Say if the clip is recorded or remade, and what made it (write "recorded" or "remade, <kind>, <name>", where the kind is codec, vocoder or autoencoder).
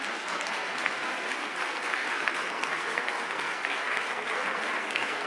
remade, codec, SNAC